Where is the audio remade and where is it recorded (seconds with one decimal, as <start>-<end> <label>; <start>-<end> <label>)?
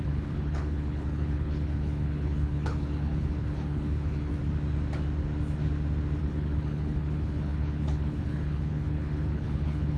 0.0-4.3 remade; 4.3-6.2 recorded; 6.2-10.0 remade